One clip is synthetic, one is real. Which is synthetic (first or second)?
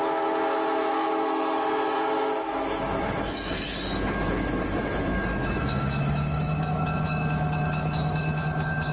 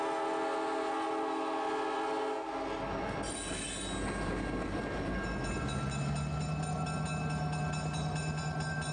first